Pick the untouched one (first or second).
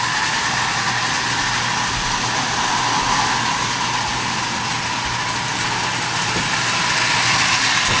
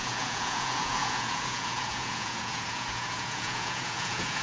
first